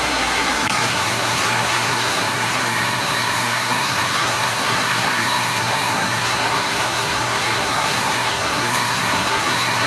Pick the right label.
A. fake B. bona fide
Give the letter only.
A